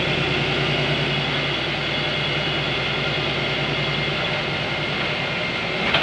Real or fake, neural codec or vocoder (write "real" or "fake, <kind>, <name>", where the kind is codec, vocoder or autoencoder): real